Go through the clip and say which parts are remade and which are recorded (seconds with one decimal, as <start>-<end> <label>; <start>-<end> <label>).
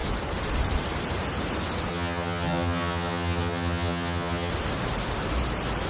0.0-1.9 recorded; 1.9-4.5 remade; 4.5-5.9 recorded